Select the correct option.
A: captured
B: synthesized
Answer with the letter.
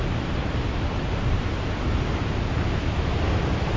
A